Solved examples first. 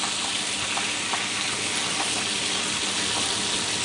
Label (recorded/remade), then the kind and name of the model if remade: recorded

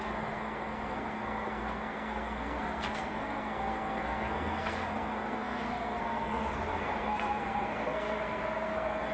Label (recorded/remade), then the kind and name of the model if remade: remade, codec, SNAC